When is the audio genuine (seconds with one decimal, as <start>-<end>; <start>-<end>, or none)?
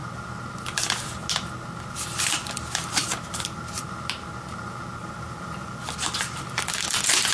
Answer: 0.0-2.4; 3.8-5.0; 5.9-7.3